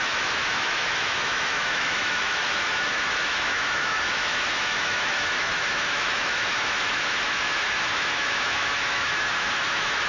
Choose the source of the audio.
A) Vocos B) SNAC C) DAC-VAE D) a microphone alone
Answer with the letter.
C